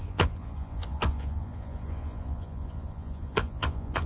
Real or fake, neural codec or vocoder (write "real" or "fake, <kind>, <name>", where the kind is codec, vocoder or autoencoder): fake, vocoder, Vocos